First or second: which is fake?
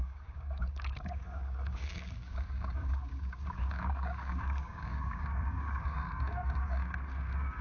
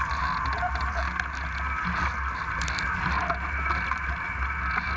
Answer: first